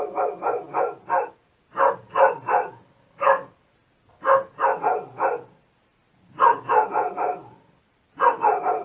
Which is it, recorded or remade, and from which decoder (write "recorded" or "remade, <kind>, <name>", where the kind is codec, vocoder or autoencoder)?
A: recorded